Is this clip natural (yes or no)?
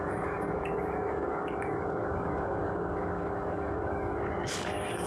no